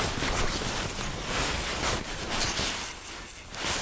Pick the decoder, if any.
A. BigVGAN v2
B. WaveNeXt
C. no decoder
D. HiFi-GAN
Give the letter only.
C